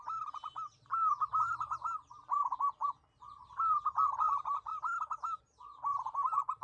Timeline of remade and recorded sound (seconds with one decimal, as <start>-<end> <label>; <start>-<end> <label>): 0.0-6.6 recorded